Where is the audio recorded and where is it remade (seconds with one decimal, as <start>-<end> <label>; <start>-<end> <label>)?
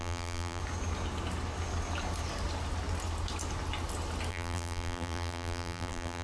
0.0-0.6 remade; 0.6-4.3 recorded; 4.3-6.2 remade